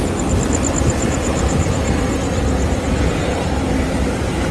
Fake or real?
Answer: real